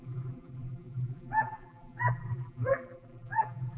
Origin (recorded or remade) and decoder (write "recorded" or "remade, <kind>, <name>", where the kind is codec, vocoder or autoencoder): remade, vocoder, BigVGAN v2